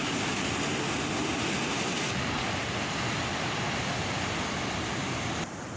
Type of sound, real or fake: real